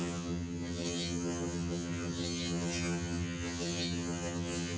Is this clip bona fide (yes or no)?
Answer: no